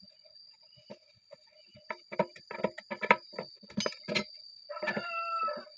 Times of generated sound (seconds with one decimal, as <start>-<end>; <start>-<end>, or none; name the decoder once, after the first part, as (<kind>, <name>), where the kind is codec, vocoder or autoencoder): none